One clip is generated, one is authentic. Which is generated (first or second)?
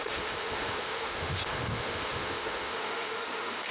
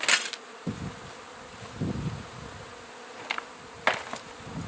first